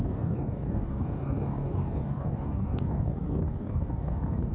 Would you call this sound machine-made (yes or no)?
yes